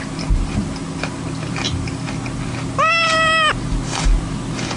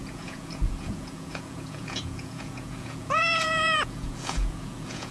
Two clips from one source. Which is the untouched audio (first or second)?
first